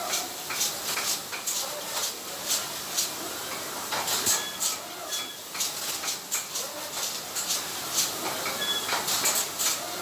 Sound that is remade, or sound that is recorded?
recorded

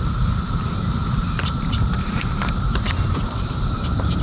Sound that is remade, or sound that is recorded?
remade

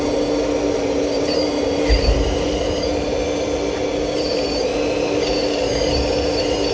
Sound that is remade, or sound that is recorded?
recorded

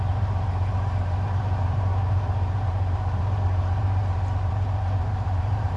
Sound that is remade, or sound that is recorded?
remade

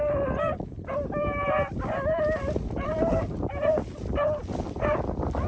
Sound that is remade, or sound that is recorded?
remade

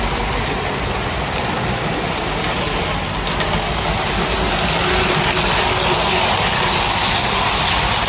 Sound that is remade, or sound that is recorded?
recorded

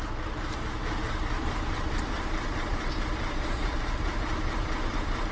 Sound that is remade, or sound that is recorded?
remade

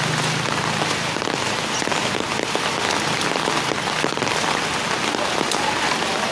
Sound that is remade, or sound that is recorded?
recorded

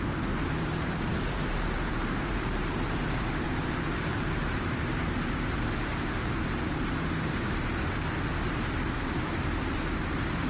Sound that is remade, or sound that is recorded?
remade